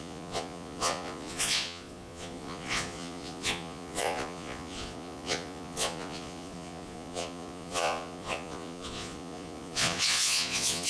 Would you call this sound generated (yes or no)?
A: yes